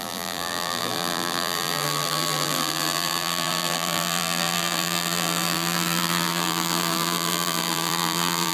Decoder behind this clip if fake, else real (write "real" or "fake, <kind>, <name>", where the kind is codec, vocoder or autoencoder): fake, vocoder, BigVGAN v2